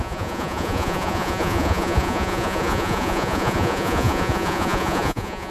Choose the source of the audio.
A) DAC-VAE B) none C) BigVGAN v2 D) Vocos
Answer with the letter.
D